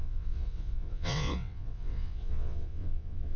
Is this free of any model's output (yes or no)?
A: no